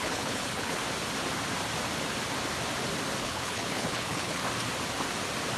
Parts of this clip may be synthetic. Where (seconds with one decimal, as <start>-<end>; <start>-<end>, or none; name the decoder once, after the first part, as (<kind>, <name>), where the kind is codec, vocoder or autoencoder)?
0.0-0.8 (codec, HILCodec); 3.2-4.4